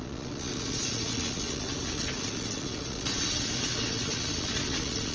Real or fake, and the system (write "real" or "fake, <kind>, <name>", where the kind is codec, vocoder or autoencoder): fake, vocoder, Vocos